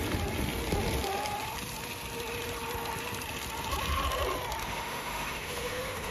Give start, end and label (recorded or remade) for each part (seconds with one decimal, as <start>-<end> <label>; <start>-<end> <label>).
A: 0.0-4.6 recorded; 4.6-6.1 remade